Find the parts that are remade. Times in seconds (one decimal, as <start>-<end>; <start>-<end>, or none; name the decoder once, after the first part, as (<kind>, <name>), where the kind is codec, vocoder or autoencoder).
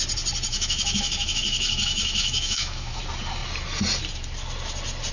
0.5-3.0 (autoencoder, DAC-VAE)